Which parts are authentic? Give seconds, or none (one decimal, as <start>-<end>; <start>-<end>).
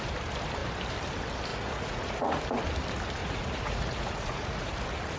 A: 0.0-1.5; 2.4-3.2; 4.7-5.2